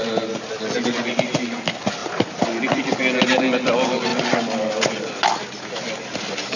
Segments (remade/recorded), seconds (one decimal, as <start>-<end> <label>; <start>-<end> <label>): 0.0-6.6 recorded